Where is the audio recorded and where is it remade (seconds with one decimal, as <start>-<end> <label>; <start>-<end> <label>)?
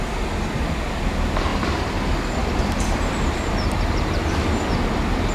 0.0-1.5 recorded; 1.5-4.3 remade; 4.3-5.3 recorded